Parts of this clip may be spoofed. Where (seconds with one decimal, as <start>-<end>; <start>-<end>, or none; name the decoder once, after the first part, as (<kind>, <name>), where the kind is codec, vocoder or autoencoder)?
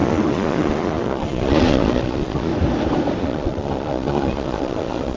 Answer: 0.0-2.5 (vocoder, Vocos); 3.2-5.2